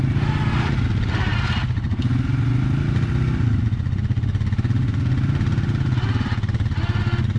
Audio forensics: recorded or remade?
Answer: recorded